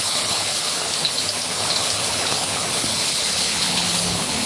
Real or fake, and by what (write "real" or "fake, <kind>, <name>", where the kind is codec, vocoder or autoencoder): fake, codec, HILCodec